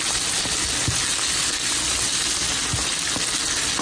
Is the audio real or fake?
real